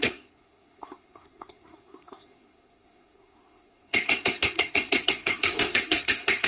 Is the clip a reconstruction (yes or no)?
yes